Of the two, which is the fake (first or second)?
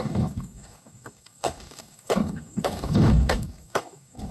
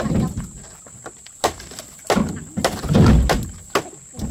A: first